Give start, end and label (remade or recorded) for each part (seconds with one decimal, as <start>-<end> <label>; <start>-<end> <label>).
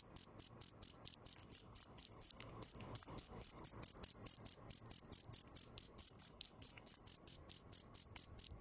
0.0-1.4 recorded; 1.4-3.7 remade; 3.7-6.0 recorded; 6.0-7.0 remade; 7.0-8.6 recorded